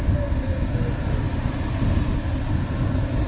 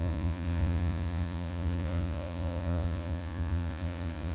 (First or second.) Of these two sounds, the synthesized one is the second